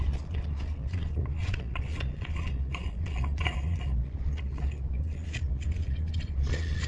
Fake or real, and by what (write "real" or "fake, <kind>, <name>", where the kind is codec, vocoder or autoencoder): fake, vocoder, Vocos